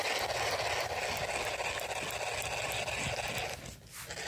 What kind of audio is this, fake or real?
real